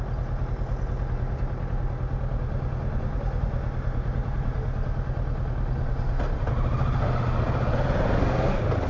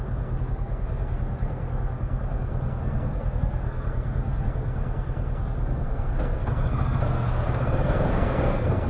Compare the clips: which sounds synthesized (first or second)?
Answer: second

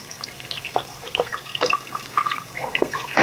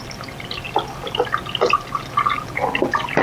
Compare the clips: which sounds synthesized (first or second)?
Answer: first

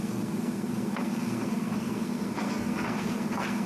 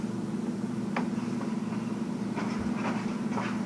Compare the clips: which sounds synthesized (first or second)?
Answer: first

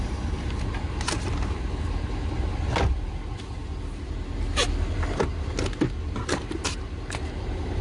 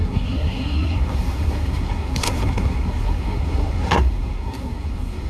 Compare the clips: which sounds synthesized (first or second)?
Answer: second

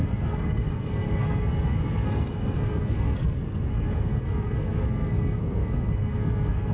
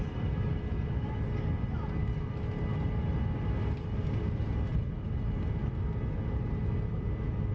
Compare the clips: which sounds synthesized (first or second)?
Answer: first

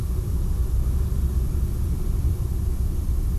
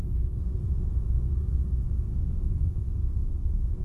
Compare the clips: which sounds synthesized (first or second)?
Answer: second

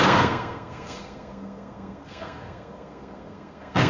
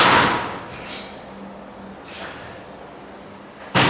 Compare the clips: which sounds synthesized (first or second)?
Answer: first